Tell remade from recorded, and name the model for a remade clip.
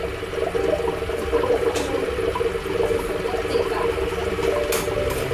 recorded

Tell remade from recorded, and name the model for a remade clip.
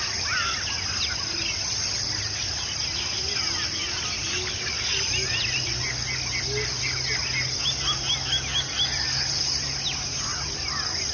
recorded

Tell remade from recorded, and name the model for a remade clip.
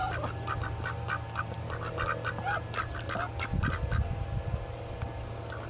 recorded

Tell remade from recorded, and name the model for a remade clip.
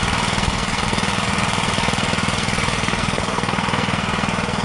remade, codec, SNAC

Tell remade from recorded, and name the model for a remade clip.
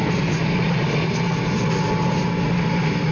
recorded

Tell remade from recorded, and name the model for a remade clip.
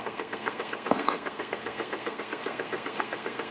remade, codec, SNAC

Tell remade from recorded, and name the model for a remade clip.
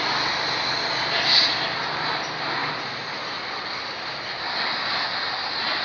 recorded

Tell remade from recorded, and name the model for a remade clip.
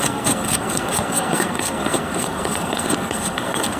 remade, codec, SNAC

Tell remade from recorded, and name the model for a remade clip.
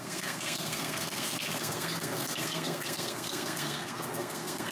remade, codec, SNAC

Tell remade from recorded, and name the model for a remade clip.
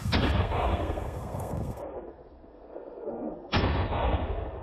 remade, codec, SNAC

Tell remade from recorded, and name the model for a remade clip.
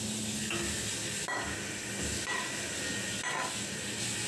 recorded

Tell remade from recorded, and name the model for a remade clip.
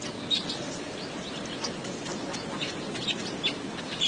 recorded